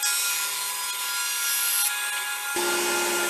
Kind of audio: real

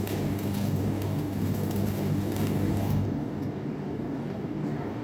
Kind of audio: fake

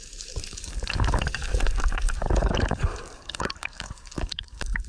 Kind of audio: fake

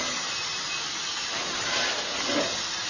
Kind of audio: real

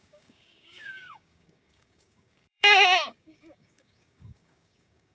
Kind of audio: fake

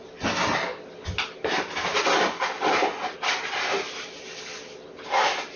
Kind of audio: real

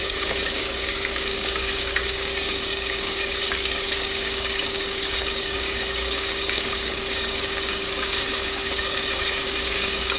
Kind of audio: fake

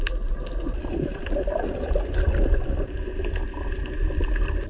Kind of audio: real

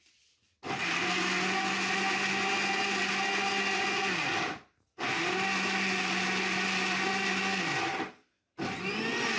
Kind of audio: real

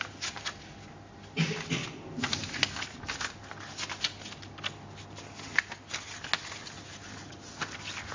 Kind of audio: real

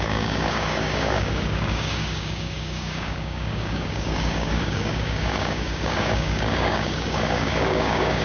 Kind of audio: fake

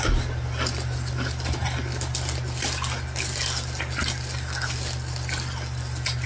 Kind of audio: real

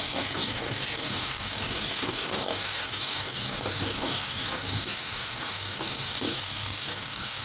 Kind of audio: fake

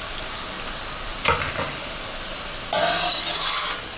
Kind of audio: real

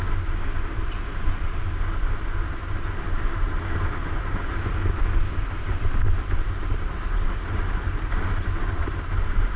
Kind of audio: real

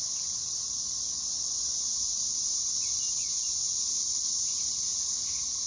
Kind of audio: real